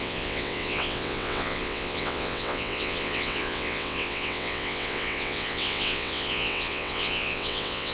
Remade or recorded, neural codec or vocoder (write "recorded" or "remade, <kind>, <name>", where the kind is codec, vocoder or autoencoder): remade, vocoder, WaveNeXt